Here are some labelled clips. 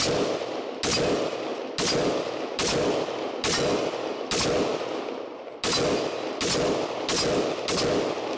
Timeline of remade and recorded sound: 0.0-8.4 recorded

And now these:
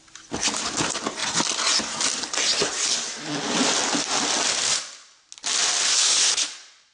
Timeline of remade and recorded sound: 0.0-5.9 recorded; 5.9-6.5 remade; 6.5-6.9 recorded

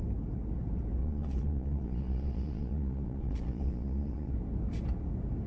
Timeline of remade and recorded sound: 0.0-1.0 recorded; 1.0-4.3 remade; 4.3-5.5 recorded

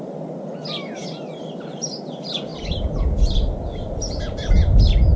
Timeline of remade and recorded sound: 0.0-1.0 recorded; 1.0-2.1 remade; 2.1-5.2 recorded

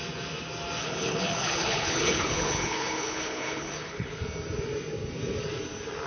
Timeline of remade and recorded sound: 0.0-0.8 recorded; 0.8-4.2 remade; 4.2-6.1 recorded

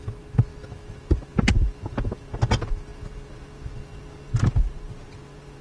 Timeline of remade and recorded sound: 0.0-5.6 recorded

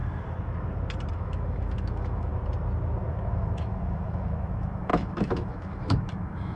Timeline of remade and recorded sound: 0.0-1.1 recorded; 1.1-2.3 remade; 2.3-3.1 recorded; 3.1-6.6 remade